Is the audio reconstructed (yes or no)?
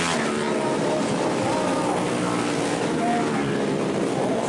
no